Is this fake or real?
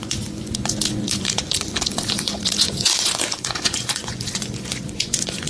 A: fake